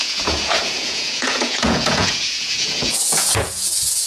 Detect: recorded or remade remade